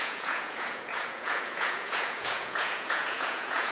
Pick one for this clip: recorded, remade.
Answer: remade